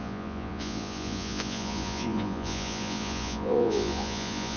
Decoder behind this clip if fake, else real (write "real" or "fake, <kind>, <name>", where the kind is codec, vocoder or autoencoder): fake, vocoder, Vocos